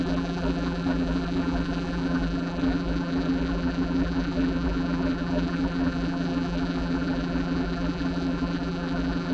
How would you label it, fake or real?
fake